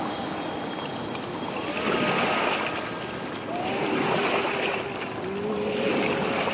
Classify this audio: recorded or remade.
recorded